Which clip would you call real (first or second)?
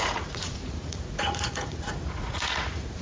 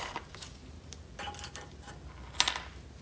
second